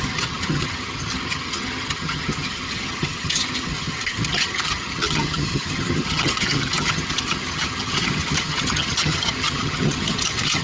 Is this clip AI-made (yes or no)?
yes